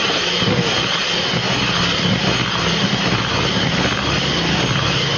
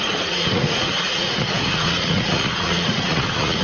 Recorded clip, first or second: first